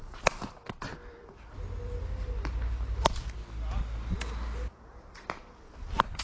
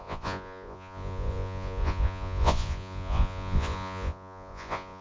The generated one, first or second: second